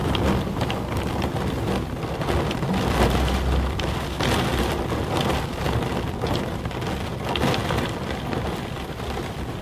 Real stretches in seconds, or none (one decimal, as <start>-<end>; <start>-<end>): 0.0-9.6